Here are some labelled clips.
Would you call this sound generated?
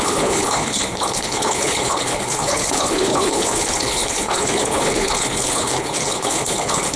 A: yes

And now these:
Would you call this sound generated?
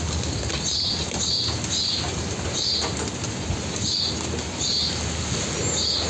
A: no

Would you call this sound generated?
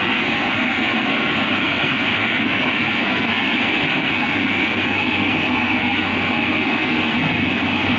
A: yes